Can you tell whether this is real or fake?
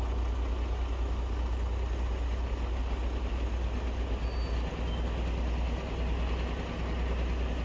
real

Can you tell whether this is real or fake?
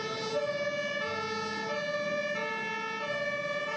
real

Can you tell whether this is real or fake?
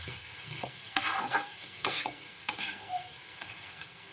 fake